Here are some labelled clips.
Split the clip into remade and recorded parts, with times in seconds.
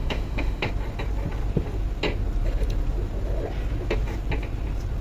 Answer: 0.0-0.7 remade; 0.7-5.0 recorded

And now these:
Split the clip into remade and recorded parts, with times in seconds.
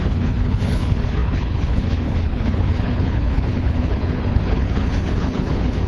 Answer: 0.0-5.9 remade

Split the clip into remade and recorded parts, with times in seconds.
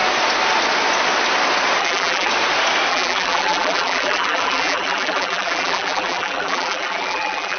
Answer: 0.0-1.8 recorded; 1.8-2.3 remade; 2.3-2.9 recorded; 2.9-7.6 remade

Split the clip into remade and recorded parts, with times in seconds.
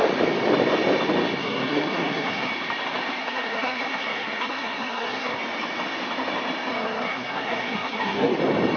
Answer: 0.0-1.4 recorded; 1.4-2.5 remade; 2.5-3.2 recorded; 3.2-5.4 remade; 5.4-6.7 recorded; 6.7-8.4 remade; 8.4-8.8 recorded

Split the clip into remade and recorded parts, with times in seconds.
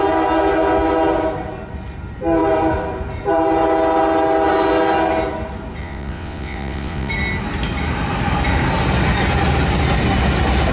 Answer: 0.0-5.8 recorded; 5.8-7.1 remade; 7.1-10.7 recorded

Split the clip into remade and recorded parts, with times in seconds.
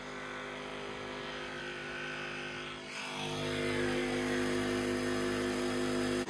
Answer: 0.0-6.3 recorded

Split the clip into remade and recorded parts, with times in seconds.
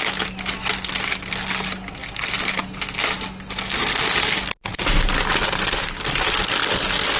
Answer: 0.0-7.2 recorded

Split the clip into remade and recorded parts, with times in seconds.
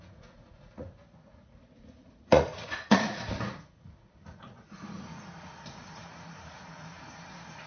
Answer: 0.0-7.7 remade